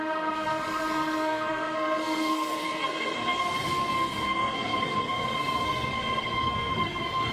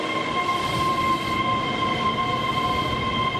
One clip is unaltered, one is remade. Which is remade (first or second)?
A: first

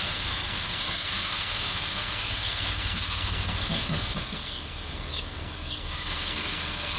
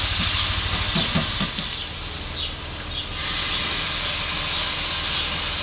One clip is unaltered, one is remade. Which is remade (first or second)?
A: first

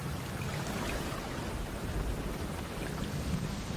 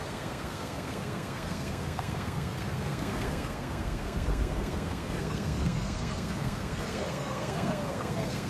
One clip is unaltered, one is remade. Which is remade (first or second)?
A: second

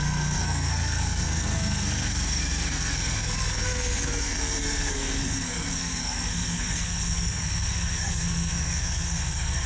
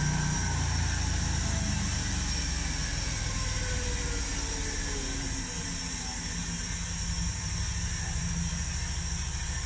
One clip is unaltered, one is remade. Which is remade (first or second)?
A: first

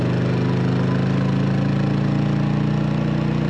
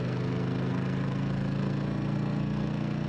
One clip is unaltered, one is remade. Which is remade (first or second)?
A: second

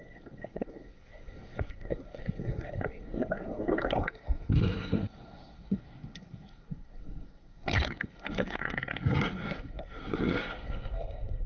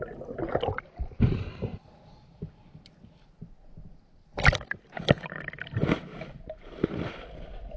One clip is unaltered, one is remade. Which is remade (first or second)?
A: first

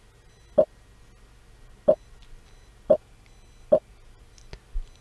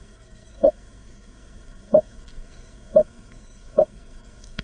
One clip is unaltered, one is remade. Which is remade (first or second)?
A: second